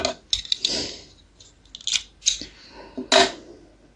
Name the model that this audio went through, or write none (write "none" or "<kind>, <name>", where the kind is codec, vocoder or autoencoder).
none